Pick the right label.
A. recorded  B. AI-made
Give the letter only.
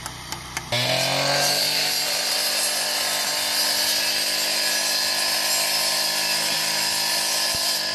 A